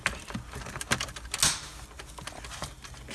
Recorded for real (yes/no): yes